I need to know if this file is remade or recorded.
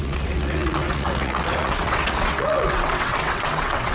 remade